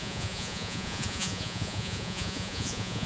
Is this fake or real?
fake